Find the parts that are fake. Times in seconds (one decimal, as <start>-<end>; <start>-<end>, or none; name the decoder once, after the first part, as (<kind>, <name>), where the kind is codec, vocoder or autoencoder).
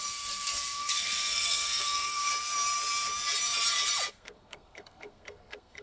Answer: 0.0-2.3 (codec, SNAC); 4.1-5.8